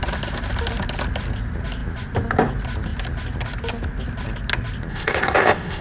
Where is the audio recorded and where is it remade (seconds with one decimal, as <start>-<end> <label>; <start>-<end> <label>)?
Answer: 0.0-4.9 recorded; 4.9-5.8 remade